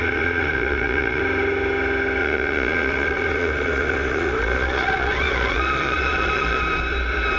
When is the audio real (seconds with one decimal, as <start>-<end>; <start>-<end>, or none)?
1.2-2.2; 6.6-7.4